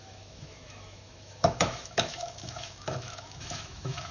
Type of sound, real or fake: fake